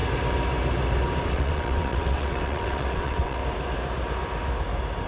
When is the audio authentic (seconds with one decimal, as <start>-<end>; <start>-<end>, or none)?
0.0-1.3; 3.4-5.1

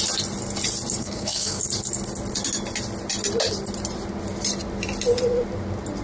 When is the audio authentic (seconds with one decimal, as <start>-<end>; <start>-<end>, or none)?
0.0-1.0; 1.6-6.0